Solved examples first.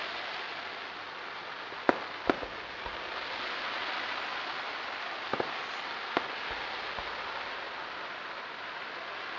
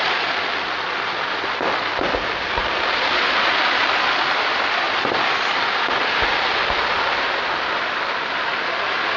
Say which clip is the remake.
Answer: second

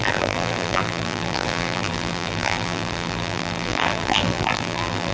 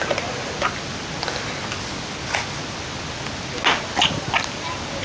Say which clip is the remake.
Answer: first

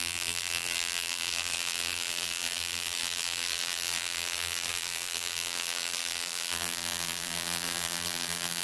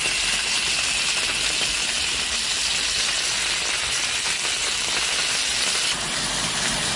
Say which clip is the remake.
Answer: first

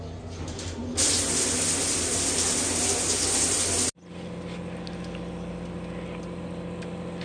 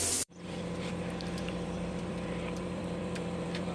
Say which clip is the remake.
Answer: second